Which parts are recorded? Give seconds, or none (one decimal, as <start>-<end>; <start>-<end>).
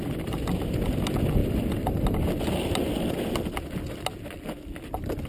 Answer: 0.0-1.4; 2.3-5.3